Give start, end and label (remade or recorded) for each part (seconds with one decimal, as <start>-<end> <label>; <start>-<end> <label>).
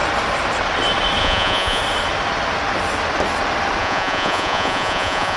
0.0-1.2 recorded; 1.2-1.8 remade; 1.8-3.8 recorded; 3.8-5.4 remade